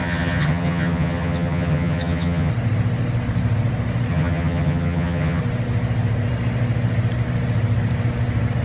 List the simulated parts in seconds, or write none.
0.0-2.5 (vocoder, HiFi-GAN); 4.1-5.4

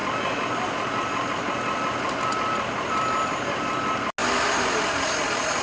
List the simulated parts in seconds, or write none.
none